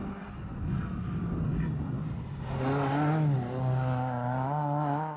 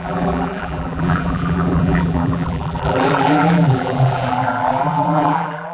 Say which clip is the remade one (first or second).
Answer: second